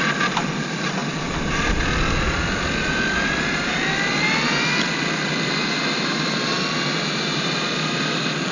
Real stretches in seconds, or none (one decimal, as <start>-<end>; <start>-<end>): 0.0-8.5